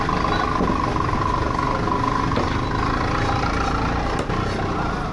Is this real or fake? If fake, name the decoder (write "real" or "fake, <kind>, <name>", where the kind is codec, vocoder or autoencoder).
real